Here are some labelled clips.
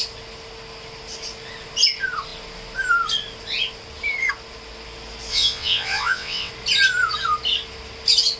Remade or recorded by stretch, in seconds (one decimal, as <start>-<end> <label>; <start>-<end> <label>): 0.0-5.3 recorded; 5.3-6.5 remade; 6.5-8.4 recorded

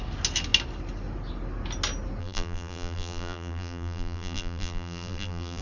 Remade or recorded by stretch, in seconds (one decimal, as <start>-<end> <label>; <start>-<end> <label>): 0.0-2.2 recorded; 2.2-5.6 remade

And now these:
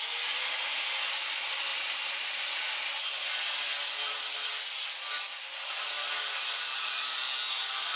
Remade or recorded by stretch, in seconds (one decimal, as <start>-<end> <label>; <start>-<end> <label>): 0.0-8.0 recorded

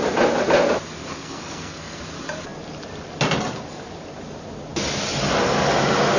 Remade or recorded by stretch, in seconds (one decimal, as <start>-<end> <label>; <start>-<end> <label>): 0.0-1.1 recorded; 1.1-2.0 remade; 2.0-6.2 recorded

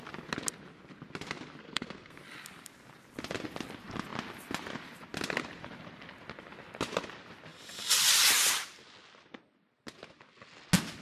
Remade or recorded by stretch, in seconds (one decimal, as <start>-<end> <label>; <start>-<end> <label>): 0.0-1.6 recorded; 1.6-2.2 remade; 2.2-11.0 recorded

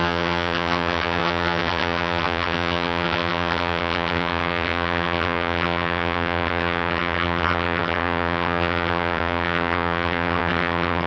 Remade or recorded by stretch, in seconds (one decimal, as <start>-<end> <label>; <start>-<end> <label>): 0.0-11.1 remade